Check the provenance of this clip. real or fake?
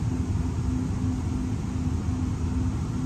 real